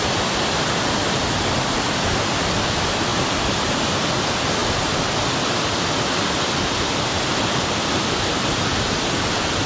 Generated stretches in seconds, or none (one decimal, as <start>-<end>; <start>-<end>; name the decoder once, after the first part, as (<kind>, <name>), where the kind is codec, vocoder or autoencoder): none

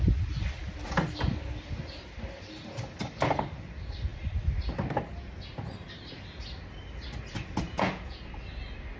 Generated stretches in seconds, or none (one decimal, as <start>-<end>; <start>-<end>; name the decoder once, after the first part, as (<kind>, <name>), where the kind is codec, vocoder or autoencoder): 7.7-8.2 (vocoder, Vocos)

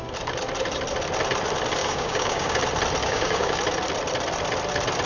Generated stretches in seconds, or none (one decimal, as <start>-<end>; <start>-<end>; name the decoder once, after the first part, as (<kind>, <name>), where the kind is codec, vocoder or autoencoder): 1.8-2.6 (codec, DAC); 3.0-3.6

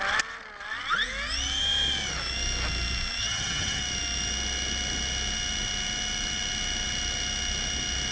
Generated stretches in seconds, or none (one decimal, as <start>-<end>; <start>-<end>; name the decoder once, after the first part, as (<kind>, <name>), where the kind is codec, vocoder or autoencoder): 3.2-3.8 (vocoder, HiFi-GAN)

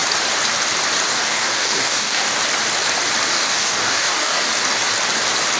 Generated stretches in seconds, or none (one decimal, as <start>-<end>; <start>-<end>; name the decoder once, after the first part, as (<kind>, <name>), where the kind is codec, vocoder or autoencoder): 1.1-2.4 (codec, DAC); 3.3-4.5

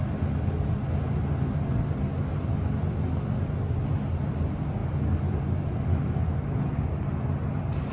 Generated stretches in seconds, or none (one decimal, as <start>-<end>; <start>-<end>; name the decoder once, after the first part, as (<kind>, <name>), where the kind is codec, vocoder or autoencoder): none